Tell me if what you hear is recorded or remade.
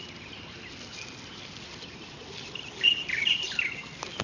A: recorded